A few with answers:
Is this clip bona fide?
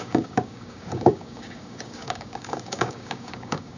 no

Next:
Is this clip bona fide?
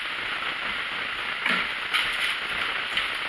yes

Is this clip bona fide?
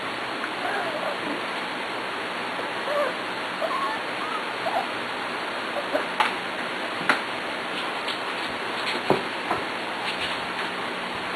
yes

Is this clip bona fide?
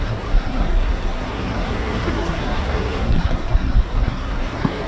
no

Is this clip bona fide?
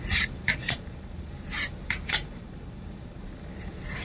no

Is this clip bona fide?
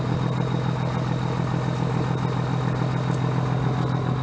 yes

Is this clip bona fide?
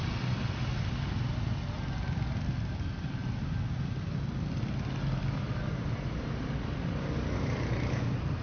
yes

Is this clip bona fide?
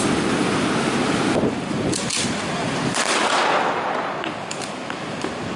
yes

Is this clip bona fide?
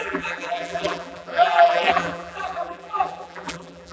no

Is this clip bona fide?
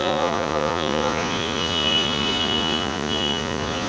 no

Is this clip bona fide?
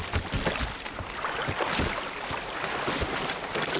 yes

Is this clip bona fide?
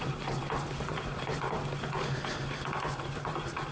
yes